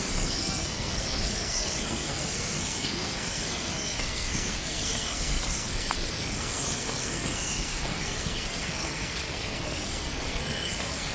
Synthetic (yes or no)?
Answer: yes